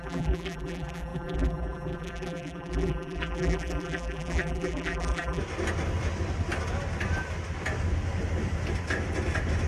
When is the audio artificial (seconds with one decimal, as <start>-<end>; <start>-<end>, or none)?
0.0-5.4